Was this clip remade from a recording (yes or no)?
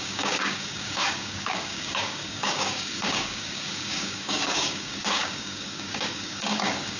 yes